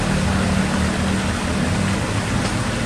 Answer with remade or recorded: recorded